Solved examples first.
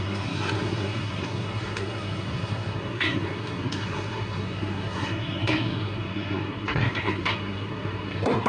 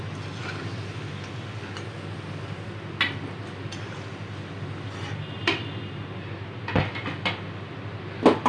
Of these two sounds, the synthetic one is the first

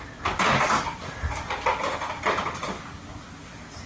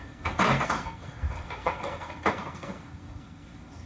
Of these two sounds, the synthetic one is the second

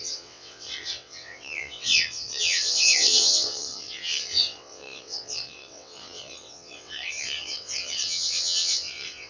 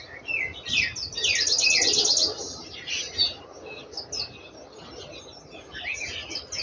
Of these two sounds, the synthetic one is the first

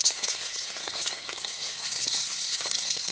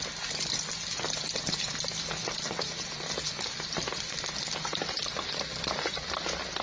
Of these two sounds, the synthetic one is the first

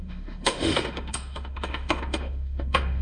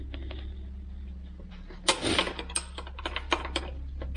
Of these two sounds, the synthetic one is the first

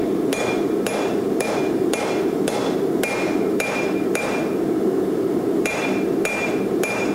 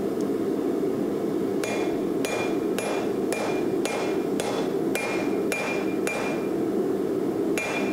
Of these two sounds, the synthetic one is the first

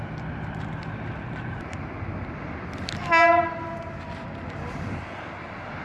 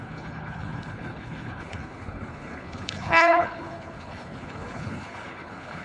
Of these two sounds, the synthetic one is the second